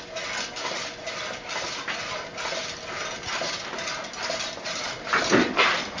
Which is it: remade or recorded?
recorded